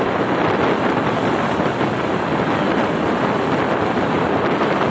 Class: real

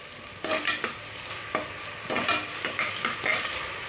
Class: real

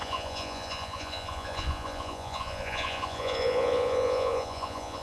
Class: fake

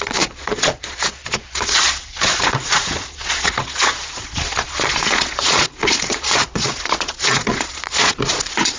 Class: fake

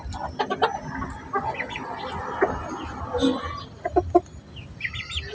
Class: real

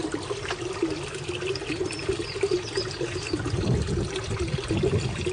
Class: real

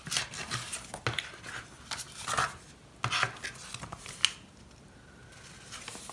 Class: real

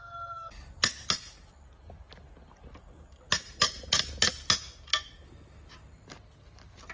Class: real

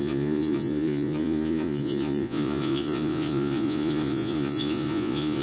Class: fake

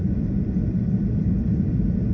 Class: real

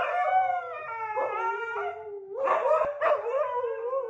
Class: real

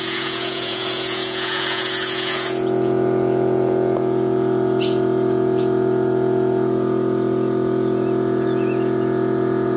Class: fake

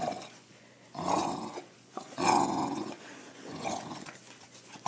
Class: fake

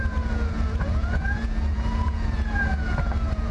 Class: fake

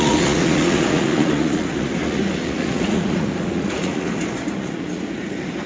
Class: fake